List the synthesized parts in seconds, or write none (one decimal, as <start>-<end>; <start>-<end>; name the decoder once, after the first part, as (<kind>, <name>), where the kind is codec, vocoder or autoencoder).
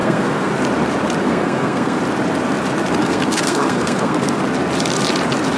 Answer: 0.0-0.5 (codec, SNAC); 1.2-2.0; 3.0-4.4